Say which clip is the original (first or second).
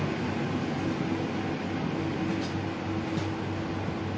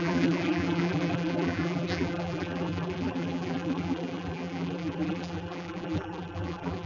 first